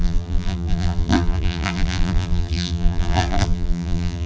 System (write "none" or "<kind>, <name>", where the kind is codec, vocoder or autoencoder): vocoder, BigVGAN v2